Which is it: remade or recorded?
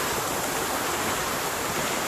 recorded